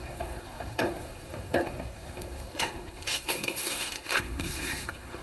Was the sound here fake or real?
fake